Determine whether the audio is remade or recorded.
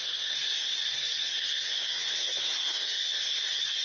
remade